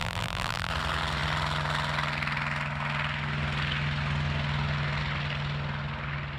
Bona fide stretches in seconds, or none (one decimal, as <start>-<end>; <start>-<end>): 0.7-6.4